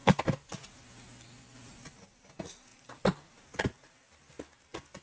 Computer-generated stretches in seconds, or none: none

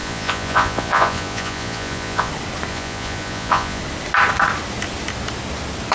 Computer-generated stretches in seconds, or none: 0.0-2.3 (vocoder, Vocos); 2.7-3.8

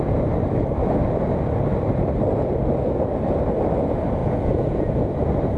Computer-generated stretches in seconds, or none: 4.2-4.9 (vocoder, Vocos)

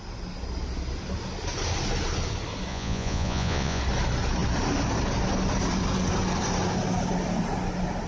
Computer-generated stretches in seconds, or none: 2.7-3.8 (vocoder, Vocos)

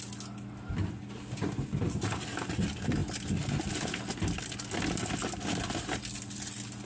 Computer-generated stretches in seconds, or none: none